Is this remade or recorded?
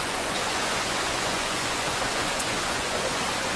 remade